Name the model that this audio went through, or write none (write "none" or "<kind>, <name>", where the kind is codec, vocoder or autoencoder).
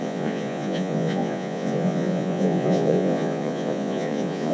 vocoder, Vocos